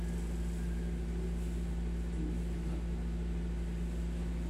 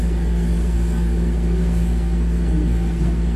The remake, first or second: second